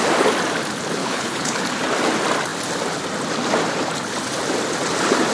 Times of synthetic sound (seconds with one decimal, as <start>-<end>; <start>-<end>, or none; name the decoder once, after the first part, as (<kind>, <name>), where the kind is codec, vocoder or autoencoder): 1.0-1.6 (codec, HILCodec)